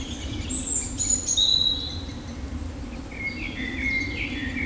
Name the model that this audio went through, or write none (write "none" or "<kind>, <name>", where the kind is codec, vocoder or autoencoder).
none